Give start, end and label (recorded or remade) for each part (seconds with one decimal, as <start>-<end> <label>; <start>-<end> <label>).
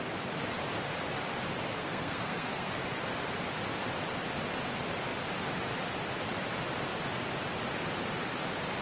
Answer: 0.0-1.7 recorded; 1.7-2.8 remade; 2.8-8.8 recorded